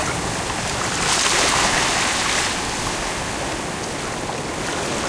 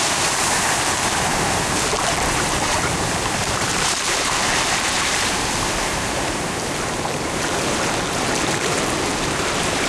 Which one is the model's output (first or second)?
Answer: second